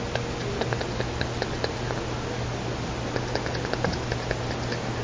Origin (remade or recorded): recorded